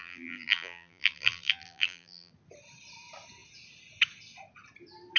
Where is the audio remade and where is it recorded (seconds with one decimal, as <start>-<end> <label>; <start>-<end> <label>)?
0.0-2.3 remade; 2.3-5.2 recorded